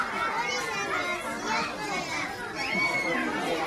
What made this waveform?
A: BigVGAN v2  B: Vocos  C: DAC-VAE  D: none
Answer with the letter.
D